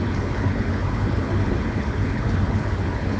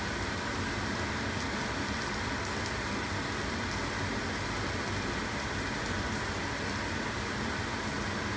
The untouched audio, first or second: second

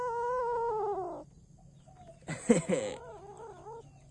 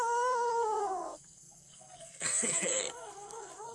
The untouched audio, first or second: first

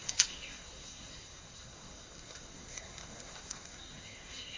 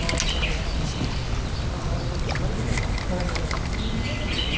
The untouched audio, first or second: second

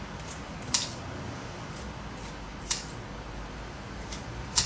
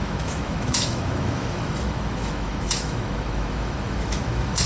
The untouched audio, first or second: first